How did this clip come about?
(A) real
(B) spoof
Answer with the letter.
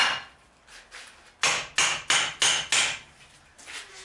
A